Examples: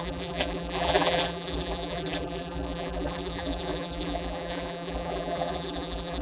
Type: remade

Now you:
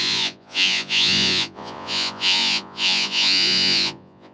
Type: remade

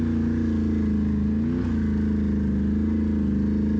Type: recorded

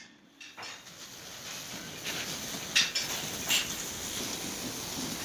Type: recorded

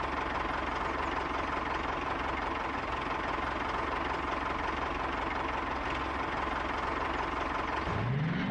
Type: recorded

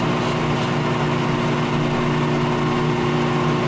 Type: recorded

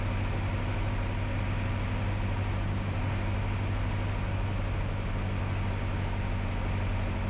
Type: recorded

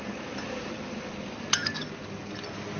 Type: recorded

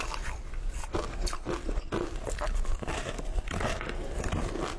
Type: recorded